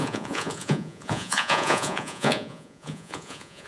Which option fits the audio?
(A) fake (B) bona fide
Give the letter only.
A